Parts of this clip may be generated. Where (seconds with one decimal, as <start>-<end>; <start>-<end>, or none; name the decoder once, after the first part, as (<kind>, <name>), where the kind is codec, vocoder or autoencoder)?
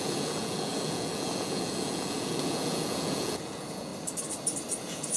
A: 0.0-3.9 (vocoder, Vocos); 4.8-5.2